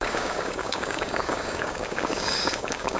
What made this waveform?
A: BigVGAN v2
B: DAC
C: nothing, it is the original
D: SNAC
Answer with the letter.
B